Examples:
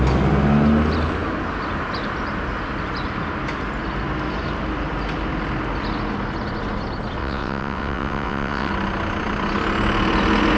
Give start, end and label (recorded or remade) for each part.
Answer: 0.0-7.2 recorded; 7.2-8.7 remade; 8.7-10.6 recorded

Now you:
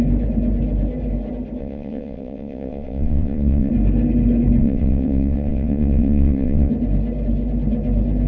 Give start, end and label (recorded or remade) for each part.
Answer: 0.0-1.6 recorded; 1.6-3.7 remade; 3.7-4.6 recorded; 4.6-6.7 remade; 6.7-8.3 recorded